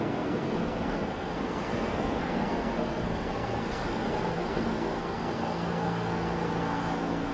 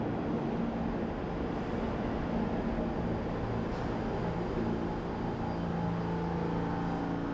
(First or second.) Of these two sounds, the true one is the second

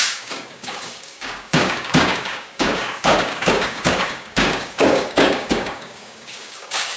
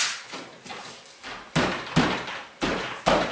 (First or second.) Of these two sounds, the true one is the second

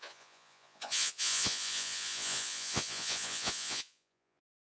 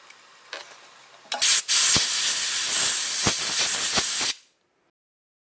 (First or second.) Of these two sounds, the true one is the second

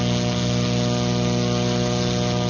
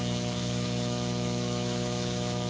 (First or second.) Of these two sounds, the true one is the first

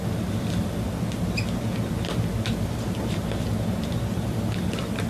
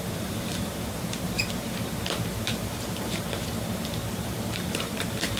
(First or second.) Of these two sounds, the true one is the first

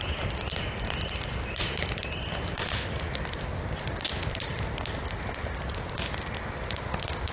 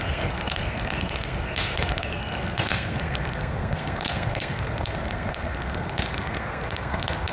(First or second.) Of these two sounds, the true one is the first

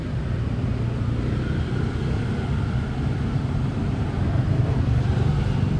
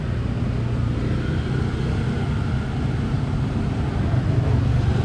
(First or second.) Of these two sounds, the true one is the second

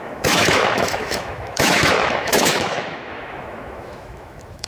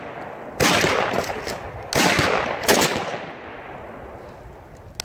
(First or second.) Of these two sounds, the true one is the second